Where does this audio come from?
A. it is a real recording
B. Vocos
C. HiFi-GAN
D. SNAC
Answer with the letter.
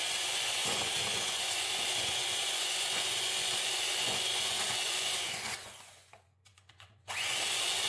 B